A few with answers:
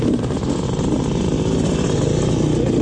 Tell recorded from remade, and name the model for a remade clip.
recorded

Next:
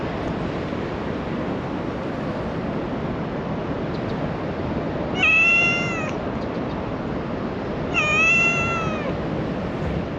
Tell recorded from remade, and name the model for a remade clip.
recorded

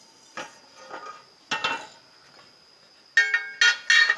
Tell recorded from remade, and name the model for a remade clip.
recorded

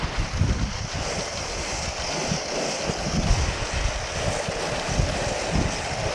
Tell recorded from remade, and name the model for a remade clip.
recorded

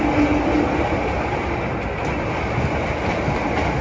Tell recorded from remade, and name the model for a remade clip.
recorded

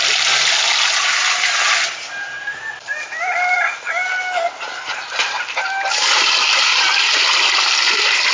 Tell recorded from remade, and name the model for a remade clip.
recorded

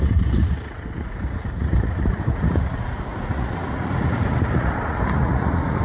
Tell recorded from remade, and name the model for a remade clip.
remade, vocoder, Vocos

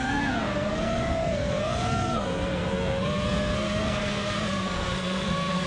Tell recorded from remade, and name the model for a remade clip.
remade, codec, SNAC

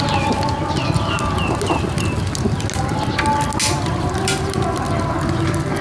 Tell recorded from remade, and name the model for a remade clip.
recorded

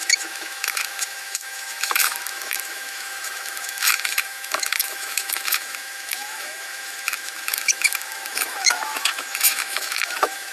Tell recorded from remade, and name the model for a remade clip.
remade, autoencoder, DAC-VAE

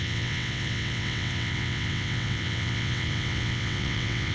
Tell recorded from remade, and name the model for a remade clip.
remade, vocoder, WaveNeXt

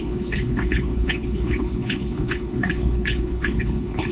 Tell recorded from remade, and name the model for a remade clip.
remade, codec, HILCodec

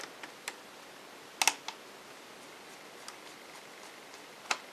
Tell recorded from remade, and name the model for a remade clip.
recorded